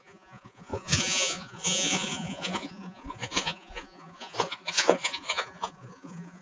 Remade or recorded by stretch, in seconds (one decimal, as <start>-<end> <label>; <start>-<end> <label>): 0.0-6.4 remade